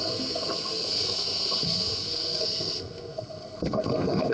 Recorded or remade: remade